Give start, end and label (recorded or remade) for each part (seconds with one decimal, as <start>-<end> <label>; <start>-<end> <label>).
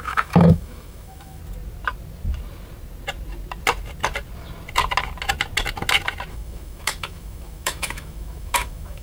0.0-1.4 remade; 1.4-6.3 recorded; 6.3-9.0 remade